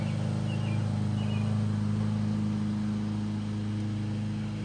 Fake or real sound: real